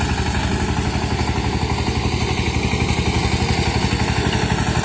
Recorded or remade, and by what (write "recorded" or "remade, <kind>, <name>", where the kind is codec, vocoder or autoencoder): recorded